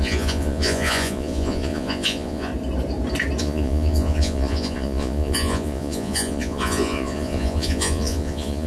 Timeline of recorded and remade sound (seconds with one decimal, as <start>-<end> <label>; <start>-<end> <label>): 0.0-2.5 remade; 2.5-3.4 recorded; 3.4-8.7 remade